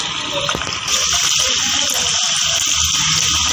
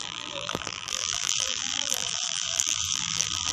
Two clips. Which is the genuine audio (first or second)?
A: first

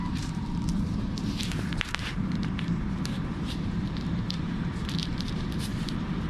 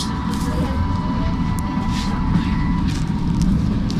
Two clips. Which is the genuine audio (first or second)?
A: second